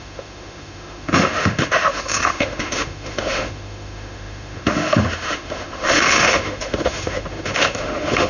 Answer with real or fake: fake